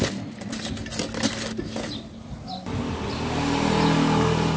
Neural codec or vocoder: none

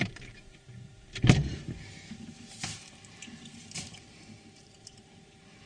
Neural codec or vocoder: vocoder, BigVGAN v2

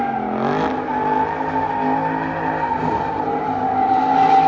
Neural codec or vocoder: none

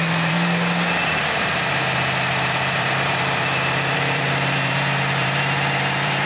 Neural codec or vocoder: vocoder, BigVGAN v2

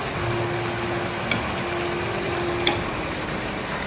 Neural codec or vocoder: none